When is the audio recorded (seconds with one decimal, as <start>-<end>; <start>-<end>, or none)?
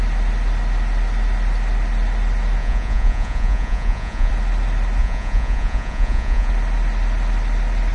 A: 0.0-2.6; 4.3-5.0; 6.5-7.9